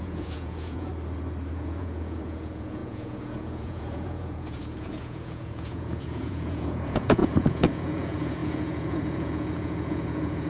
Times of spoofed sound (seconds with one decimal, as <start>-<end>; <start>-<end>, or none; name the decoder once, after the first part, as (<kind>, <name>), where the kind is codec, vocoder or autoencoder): 0.0-0.9 (vocoder, Vocos); 1.5-10.5